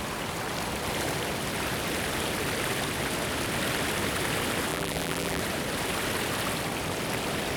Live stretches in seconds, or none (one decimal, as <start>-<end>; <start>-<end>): 0.0-4.7; 5.4-7.6